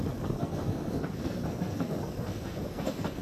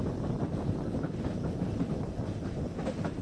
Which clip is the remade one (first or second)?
first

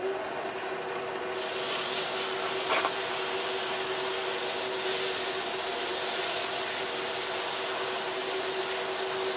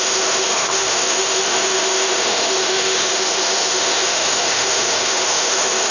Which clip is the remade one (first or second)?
second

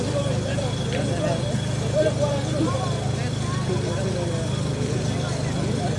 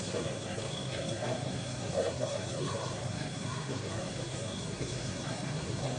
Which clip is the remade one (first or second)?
second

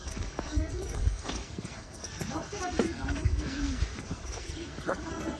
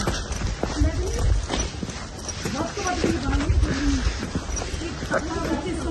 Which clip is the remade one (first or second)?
first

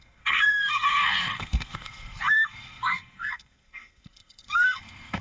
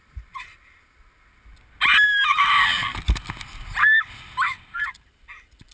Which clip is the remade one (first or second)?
first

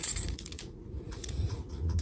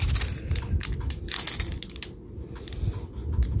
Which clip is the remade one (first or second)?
first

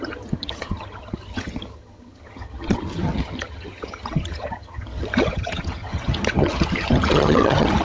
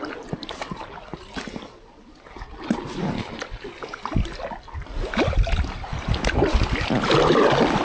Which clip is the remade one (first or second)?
first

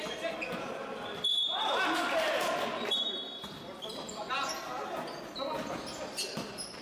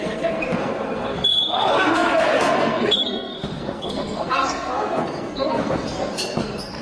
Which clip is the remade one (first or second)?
second